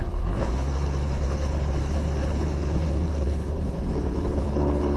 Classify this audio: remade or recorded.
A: remade